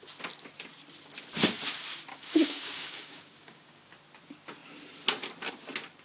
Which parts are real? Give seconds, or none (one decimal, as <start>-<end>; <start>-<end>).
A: 0.0-2.1; 3.9-6.0